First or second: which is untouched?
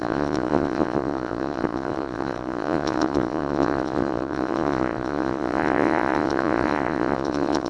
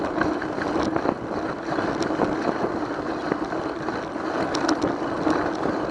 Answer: second